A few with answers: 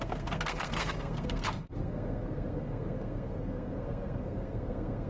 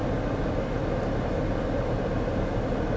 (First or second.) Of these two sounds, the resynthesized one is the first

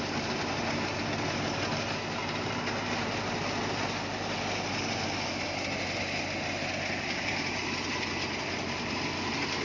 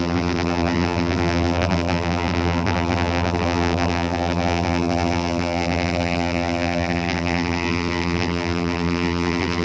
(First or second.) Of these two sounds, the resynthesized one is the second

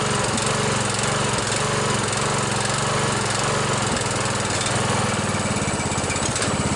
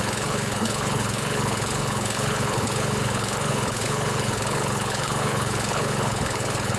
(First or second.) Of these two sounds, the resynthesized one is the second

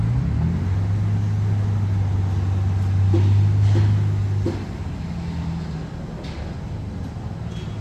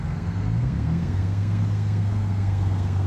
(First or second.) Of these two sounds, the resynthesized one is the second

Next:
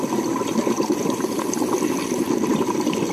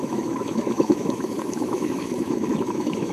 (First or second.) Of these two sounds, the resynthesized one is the second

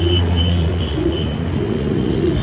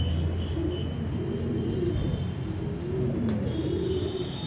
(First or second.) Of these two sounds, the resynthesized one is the first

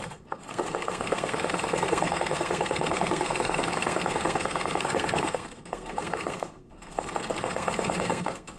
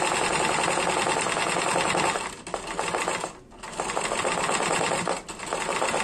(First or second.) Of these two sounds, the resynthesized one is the first